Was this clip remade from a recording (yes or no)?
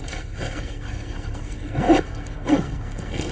yes